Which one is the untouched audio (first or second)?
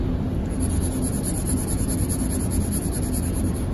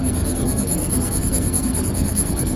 first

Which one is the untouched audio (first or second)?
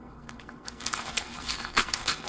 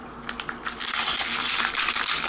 second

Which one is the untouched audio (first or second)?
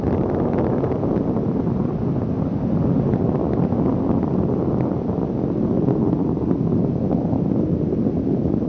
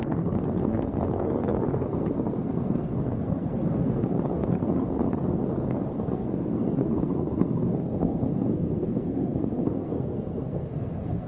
first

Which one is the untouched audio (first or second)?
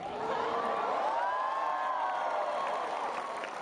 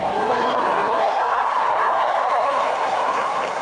first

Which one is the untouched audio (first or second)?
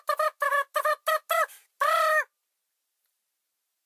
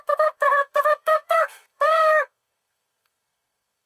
first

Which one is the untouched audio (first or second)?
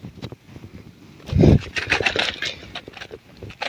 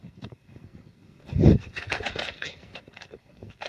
first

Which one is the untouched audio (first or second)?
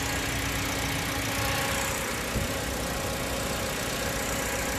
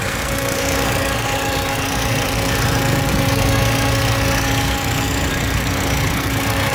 first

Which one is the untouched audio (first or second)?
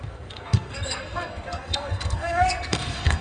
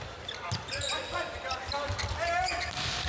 second